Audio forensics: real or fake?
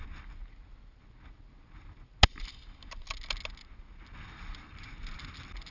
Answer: real